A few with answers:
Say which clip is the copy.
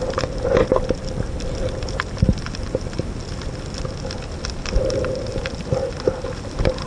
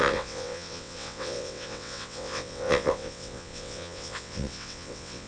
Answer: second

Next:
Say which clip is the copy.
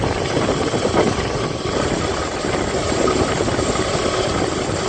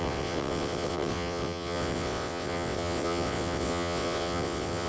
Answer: second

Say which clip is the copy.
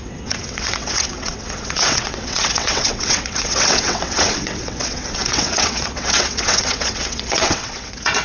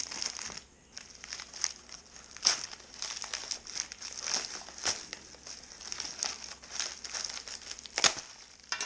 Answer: first